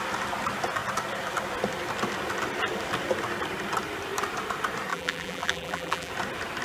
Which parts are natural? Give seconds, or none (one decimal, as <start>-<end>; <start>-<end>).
0.0-4.9; 6.1-6.6